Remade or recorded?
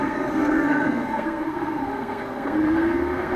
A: remade